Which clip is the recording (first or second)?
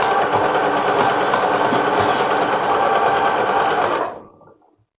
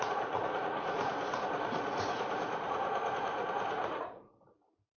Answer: first